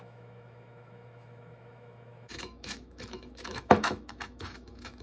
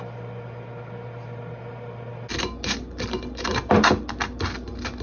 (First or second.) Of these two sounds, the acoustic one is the second